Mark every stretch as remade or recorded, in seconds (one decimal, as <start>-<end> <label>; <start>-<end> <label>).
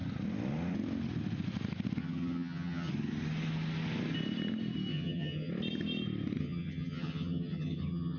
0.0-2.0 recorded; 2.0-2.9 remade; 2.9-4.9 recorded; 4.9-5.5 remade; 5.5-6.4 recorded; 6.4-8.2 remade